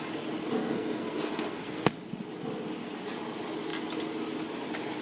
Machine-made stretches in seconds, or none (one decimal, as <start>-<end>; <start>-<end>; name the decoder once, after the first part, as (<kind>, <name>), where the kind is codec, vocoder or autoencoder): 0.6-1.9 (codec, SNAC)